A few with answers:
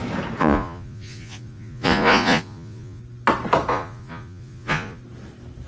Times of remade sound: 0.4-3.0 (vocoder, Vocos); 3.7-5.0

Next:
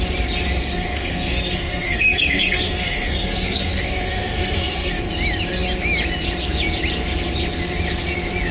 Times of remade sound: 0.6-4.9 (codec, SNAC)